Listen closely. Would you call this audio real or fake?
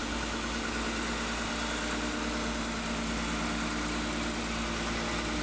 real